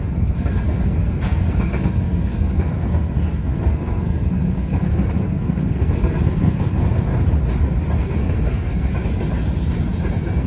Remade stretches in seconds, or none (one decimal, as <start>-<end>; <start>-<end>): 0.0-7.1; 8.0-8.9; 10.1-10.5